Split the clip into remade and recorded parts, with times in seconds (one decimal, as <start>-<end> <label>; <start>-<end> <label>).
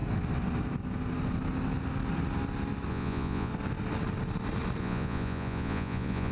0.0-2.9 recorded; 2.9-3.5 remade; 3.5-4.8 recorded; 4.8-6.3 remade